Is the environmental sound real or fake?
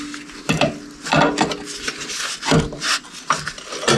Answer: real